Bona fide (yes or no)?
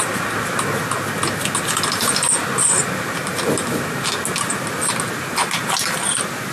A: yes